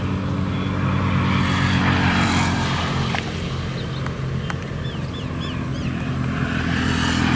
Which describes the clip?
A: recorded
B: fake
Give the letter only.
A